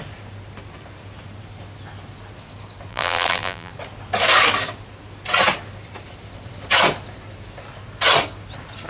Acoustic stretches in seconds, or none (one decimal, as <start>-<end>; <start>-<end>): 0.0-2.9; 3.7-8.9